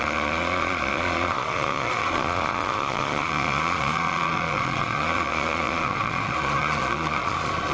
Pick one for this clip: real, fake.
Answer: fake